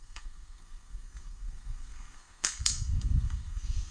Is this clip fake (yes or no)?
yes